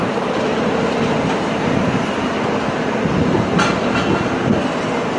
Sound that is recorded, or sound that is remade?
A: recorded